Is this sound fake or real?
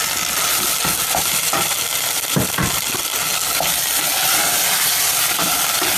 real